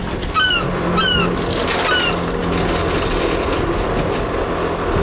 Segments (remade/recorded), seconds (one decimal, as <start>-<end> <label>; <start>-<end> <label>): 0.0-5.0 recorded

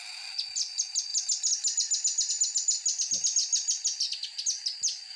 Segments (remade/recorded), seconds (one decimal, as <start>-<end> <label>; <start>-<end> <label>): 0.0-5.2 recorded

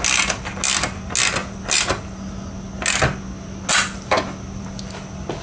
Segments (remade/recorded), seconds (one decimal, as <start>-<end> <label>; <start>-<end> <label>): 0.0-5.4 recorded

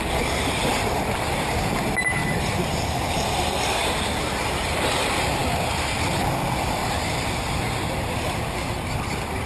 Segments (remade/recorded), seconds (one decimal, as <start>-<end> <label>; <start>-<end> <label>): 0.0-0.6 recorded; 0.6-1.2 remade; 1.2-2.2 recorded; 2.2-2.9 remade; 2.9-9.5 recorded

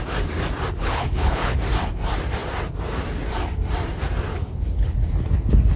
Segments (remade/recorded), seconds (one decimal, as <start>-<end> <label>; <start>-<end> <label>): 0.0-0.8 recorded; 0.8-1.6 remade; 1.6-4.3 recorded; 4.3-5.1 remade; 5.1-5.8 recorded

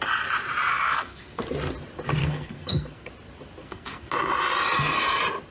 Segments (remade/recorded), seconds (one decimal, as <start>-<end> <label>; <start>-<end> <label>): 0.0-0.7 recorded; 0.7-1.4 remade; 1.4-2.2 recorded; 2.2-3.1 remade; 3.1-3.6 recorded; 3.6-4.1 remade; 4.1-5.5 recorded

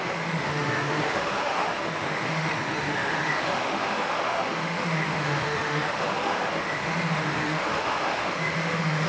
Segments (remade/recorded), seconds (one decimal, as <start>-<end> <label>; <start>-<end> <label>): 0.0-9.1 remade

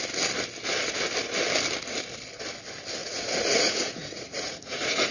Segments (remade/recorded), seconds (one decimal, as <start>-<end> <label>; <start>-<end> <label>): 0.0-3.0 recorded; 3.0-5.1 remade